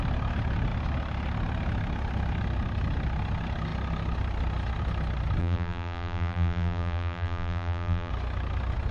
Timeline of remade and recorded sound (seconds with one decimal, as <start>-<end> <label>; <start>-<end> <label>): 0.0-5.4 recorded; 5.4-8.1 remade; 8.1-8.9 recorded